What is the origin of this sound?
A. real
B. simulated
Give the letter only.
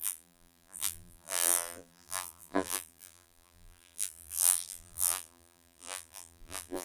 B